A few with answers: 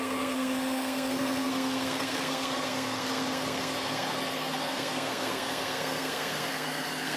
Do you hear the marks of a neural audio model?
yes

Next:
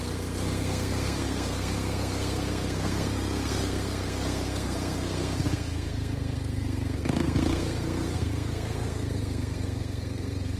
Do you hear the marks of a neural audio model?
yes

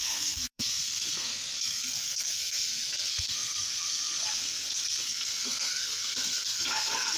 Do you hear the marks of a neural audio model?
yes